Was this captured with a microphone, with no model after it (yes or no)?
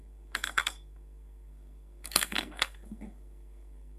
no